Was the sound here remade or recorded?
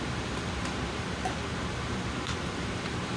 remade